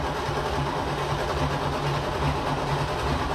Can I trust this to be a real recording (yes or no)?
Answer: yes